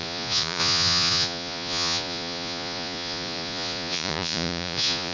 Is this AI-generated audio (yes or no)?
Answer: yes